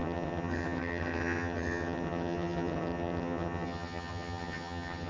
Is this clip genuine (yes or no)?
no